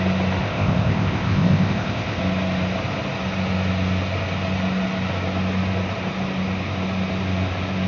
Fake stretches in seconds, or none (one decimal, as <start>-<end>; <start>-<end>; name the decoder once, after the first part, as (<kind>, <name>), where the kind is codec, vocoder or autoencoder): 0.4-2.2 (codec, ZipCodec)